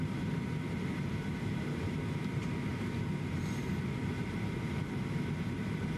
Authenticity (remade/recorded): remade